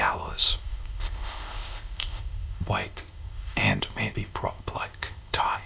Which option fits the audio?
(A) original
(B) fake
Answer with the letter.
B